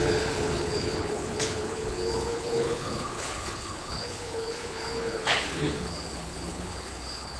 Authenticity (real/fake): fake